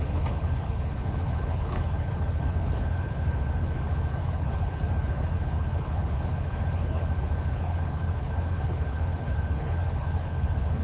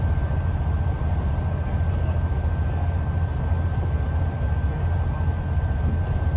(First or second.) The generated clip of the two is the first